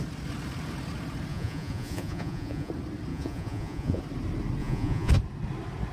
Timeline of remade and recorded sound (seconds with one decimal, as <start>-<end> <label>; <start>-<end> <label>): 0.0-1.3 recorded; 1.3-2.7 remade; 2.7-3.1 recorded; 3.1-4.0 remade; 4.0-4.6 recorded; 4.6-5.1 remade; 5.1-5.9 recorded